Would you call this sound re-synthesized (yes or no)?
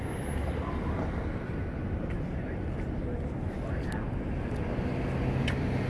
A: no